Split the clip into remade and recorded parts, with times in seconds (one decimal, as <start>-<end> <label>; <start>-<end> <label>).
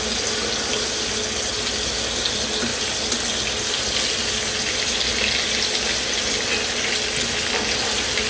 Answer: 0.0-8.3 recorded